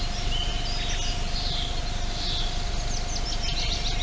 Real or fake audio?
real